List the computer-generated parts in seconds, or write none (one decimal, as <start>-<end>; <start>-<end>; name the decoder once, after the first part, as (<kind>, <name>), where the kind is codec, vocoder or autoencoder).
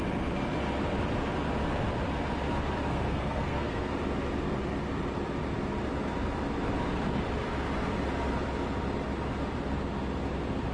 2.9-3.9 (codec, SNAC)